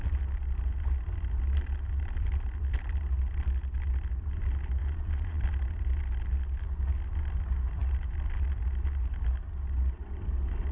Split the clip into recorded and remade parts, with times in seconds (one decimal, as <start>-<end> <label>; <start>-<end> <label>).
0.0-4.8 recorded; 4.8-5.4 remade; 5.4-10.7 recorded